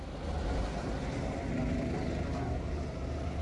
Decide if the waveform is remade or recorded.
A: recorded